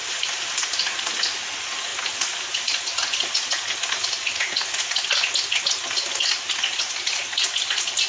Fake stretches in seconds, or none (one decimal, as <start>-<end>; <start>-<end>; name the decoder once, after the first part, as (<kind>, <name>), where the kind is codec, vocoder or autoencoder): none